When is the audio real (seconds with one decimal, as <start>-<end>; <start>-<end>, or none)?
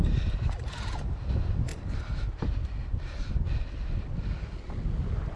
0.0-5.4